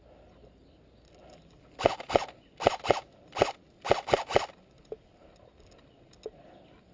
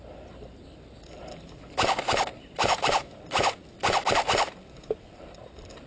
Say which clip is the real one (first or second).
first